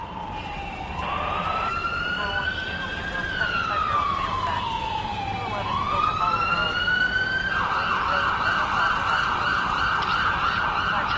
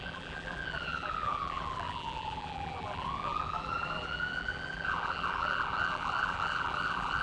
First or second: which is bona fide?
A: first